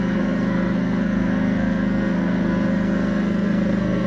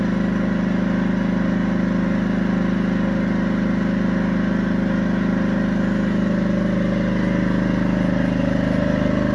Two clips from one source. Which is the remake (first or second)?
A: first